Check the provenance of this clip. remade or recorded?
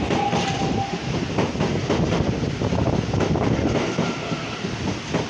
recorded